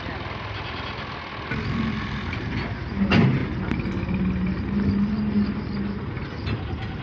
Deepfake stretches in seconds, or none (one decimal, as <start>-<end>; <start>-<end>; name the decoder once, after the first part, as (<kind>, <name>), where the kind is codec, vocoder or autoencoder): none